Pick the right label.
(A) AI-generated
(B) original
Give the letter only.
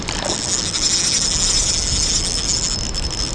B